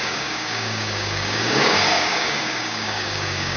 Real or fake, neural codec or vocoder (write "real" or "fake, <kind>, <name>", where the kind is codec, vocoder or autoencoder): fake, codec, DAC